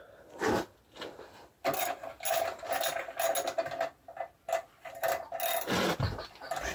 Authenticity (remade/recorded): recorded